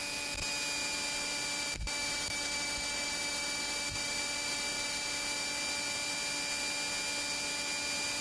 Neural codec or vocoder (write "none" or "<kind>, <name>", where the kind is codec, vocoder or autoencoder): none